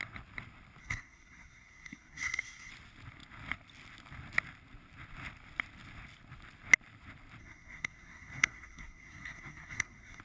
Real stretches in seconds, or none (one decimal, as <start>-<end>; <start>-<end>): 0.0-0.8; 2.7-7.4